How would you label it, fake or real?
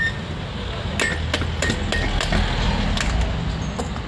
real